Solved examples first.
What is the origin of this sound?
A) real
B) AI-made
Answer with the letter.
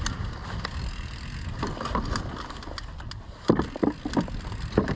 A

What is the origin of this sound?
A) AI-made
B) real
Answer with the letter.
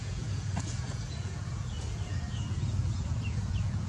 A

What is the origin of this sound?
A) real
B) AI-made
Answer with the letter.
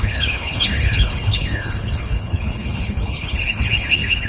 B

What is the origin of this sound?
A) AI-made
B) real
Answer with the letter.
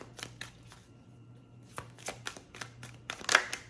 B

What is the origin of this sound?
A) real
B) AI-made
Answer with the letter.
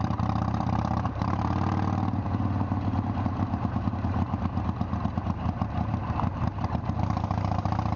B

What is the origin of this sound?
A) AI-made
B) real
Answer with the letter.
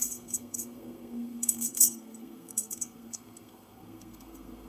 A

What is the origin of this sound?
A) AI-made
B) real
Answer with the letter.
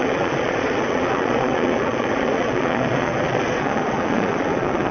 A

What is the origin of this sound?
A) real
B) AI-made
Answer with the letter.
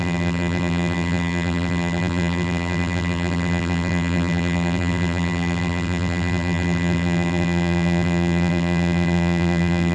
B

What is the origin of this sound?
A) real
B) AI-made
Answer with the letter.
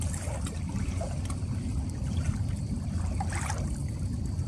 A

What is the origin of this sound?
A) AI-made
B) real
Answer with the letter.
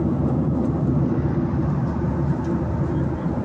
B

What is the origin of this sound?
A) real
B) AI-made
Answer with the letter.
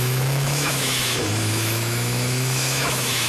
B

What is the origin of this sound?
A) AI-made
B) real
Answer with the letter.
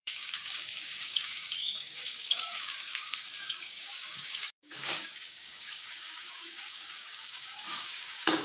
A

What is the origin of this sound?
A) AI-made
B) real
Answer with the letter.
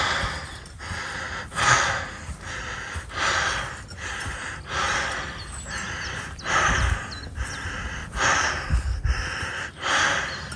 B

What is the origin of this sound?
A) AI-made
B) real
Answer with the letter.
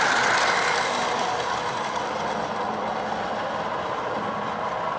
B